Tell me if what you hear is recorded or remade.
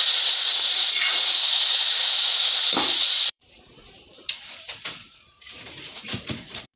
remade